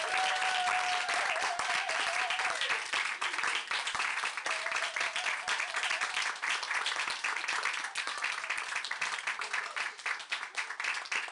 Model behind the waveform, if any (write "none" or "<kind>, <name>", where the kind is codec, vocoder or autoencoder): none